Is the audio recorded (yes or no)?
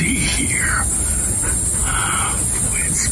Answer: yes